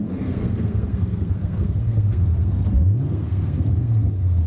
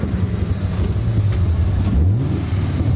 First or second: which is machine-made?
first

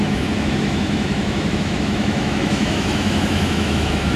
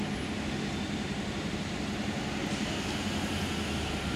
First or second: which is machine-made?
first